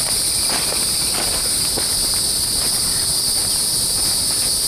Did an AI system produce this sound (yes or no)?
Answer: no